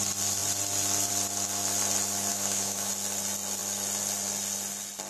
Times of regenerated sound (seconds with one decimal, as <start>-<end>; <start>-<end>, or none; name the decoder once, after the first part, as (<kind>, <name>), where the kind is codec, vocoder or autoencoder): 2.3-2.9 (autoencoder, DAC-VAE)